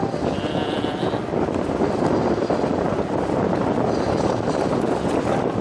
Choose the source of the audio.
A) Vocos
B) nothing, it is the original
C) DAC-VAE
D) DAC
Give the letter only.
B